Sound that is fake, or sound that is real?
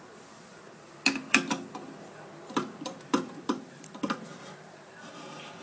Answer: fake